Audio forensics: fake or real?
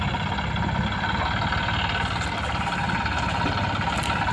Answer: real